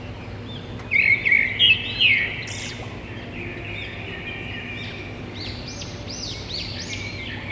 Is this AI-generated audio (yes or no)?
no